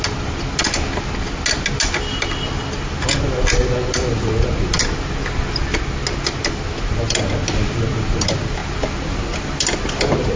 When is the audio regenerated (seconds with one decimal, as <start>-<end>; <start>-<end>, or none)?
none

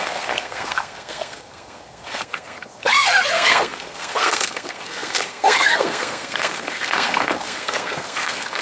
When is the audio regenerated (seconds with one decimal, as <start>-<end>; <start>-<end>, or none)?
0.0-8.6

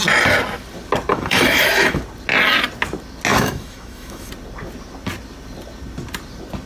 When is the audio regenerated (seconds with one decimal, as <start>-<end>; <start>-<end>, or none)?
1.1-2.0; 3.3-4.3

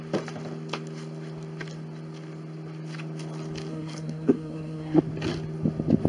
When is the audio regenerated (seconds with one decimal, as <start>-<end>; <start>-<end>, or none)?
3.7-5.0

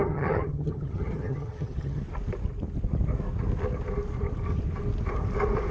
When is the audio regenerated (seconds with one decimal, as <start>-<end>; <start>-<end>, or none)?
0.0-2.0

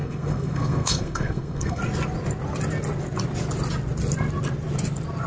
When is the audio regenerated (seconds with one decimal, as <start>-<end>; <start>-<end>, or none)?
0.0-1.8